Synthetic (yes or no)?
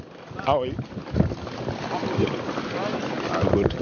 no